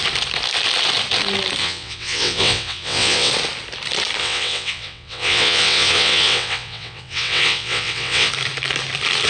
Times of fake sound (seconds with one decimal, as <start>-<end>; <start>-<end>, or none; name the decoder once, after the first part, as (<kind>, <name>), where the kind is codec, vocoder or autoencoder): 1.6-3.3 (vocoder, WaveNeXt); 4.2-8.3